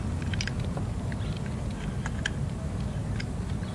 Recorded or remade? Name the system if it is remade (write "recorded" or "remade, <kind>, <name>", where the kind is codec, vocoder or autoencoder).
recorded